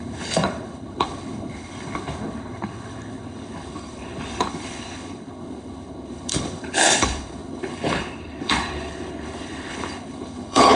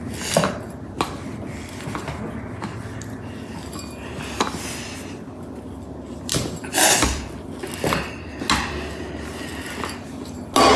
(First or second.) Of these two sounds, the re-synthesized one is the first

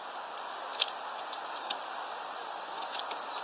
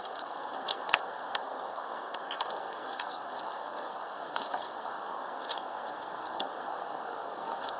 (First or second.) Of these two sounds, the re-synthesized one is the second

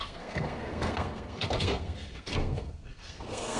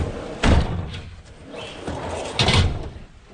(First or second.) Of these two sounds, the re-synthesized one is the first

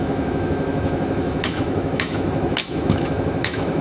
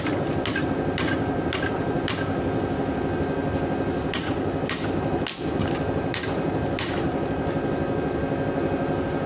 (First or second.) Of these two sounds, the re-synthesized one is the first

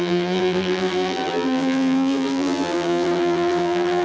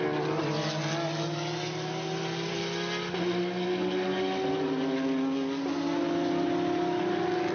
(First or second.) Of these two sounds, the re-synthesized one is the first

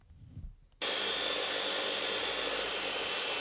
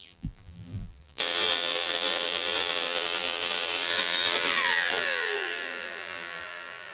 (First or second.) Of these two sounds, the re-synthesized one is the second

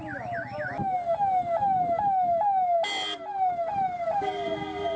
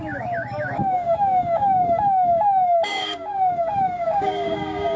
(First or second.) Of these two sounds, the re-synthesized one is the second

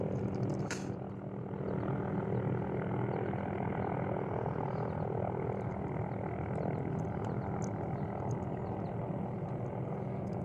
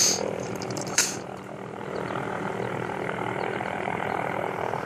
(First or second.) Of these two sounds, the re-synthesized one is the second